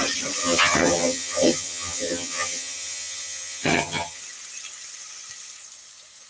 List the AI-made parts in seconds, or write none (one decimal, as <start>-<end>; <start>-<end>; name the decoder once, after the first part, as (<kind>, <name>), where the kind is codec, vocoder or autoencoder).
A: 0.4-4.2 (vocoder, HiFi-GAN)